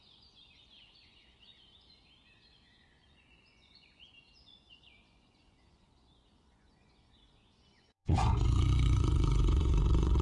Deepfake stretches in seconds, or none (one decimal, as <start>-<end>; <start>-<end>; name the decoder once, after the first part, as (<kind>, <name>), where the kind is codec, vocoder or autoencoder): 0.0-10.2 (vocoder, Vocos)